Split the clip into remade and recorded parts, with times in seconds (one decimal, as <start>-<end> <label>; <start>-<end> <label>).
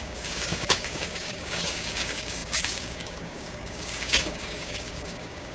0.0-5.5 remade